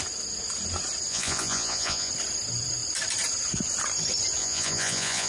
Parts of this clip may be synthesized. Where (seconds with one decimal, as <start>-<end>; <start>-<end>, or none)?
1.1-2.1; 4.4-5.3